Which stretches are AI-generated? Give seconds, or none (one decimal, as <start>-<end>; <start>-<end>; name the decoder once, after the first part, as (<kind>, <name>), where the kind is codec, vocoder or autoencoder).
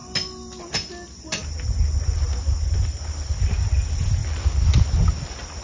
2.4-5.6 (vocoder, BigVGAN v2)